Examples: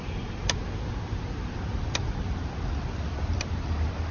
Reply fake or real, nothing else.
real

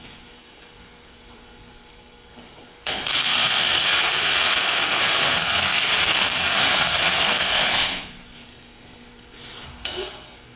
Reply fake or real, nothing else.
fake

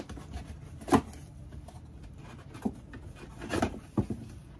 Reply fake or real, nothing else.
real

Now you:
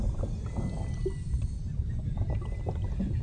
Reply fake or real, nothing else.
real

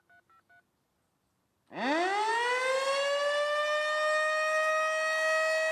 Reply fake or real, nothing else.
real